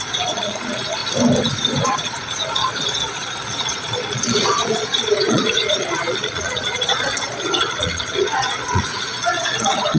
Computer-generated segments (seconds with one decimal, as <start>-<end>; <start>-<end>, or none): 0.0-1.0; 1.8-10.0